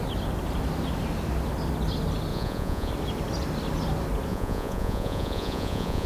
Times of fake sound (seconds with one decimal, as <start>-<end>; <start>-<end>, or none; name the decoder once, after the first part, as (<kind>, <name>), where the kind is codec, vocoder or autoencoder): 2.3-2.9 (vocoder, Vocos); 4.3-6.1